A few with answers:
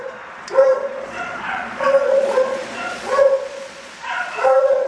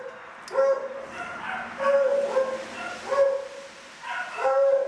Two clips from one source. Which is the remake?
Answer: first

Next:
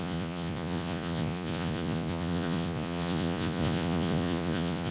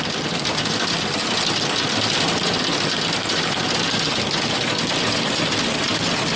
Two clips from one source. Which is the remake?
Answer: first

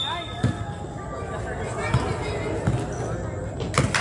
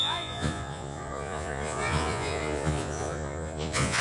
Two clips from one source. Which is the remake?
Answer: second